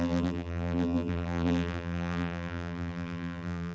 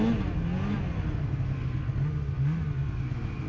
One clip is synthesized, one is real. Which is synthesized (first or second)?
first